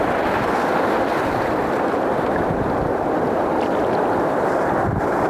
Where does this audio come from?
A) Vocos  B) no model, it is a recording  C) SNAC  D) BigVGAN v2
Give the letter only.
D